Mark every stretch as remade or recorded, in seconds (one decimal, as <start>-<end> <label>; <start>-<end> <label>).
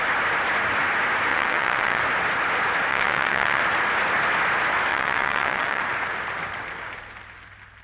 0.0-1.3 recorded; 1.3-2.0 remade; 2.0-2.9 recorded; 2.9-3.6 remade; 3.6-4.9 recorded; 4.9-5.8 remade; 5.8-7.8 recorded